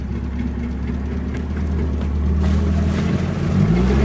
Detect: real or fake real